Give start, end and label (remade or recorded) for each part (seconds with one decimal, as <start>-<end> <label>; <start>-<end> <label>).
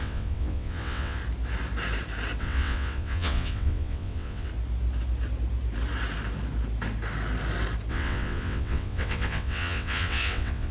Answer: 0.0-1.2 remade; 1.2-2.4 recorded; 2.4-4.5 remade; 4.5-7.9 recorded; 7.9-10.7 remade